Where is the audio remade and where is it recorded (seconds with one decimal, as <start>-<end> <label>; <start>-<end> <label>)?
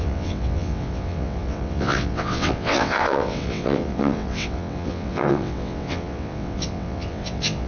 0.0-7.7 remade